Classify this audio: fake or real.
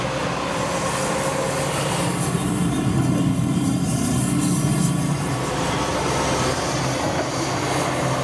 real